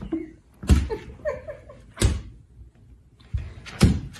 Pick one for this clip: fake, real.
real